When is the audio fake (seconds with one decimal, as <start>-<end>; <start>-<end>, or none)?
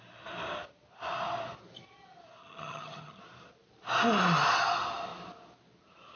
2.4-3.2